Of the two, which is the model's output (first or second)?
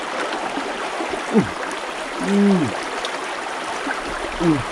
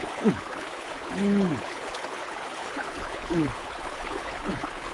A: second